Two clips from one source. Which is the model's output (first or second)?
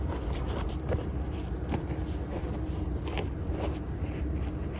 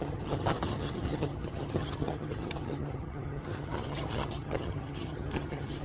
second